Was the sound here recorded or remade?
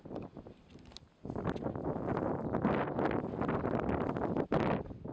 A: recorded